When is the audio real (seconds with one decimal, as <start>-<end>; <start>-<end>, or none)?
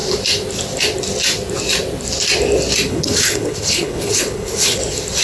0.0-2.9; 4.8-5.2